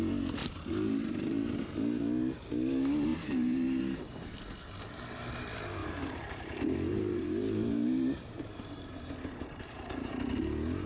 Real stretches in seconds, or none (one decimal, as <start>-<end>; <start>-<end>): 0.0-0.4; 1.6-3.1; 3.8-5.8; 10.1-10.9